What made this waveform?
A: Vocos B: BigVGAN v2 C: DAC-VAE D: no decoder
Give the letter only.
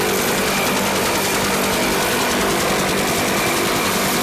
D